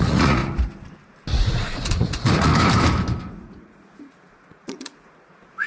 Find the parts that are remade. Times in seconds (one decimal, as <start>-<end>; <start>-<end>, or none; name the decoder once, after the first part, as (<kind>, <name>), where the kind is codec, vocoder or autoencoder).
0.0-0.4 (vocoder, Vocos); 1.3-2.5; 3.3-5.7